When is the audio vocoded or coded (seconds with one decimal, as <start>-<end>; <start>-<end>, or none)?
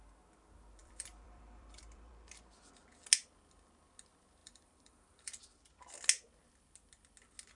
0.8-2.1; 4.4-5.9